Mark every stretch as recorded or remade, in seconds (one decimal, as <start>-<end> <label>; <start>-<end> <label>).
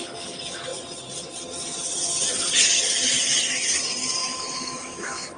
0.0-4.2 recorded; 4.2-5.4 remade